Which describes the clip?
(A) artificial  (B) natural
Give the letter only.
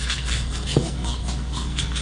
A